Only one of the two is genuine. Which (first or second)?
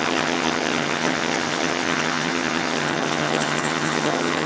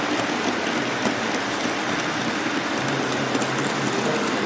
second